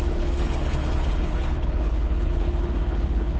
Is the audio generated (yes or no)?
yes